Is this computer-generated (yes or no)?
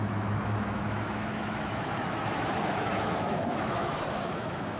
yes